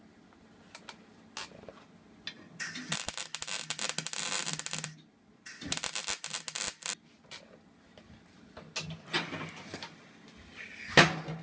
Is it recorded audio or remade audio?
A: recorded